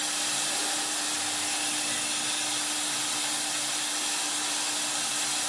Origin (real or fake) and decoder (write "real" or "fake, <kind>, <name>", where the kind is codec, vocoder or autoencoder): real